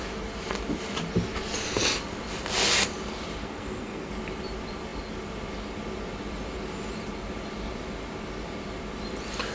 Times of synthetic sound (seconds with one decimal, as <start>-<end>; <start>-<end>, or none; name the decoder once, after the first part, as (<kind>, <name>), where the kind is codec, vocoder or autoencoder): 3.4-4.1 (codec, SNAC)